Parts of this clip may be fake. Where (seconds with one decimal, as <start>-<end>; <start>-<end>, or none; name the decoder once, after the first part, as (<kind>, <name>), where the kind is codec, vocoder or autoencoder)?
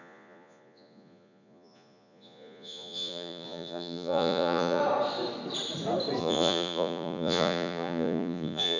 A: 0.0-4.8 (vocoder, Vocos); 6.2-8.8